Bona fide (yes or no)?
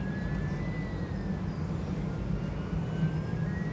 yes